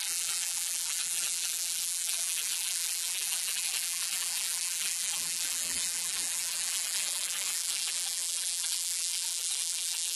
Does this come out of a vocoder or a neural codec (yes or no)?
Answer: yes